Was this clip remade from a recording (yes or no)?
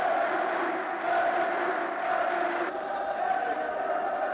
no